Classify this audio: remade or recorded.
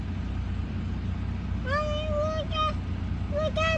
recorded